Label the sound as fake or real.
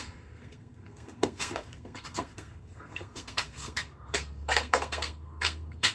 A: fake